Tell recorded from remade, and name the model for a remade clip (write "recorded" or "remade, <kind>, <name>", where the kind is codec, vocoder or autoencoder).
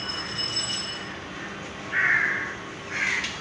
recorded